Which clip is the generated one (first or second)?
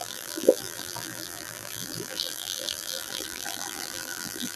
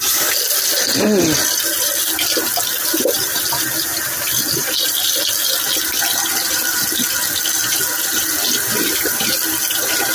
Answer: first